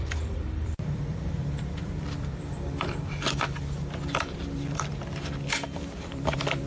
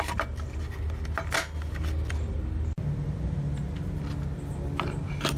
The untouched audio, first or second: second